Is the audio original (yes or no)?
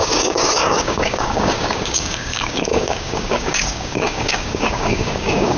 no